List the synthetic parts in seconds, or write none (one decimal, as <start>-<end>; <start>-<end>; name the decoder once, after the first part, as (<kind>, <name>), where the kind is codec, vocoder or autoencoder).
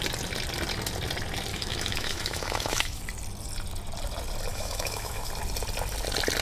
1.5-3.0 (autoencoder, DAC-VAE); 4.5-5.3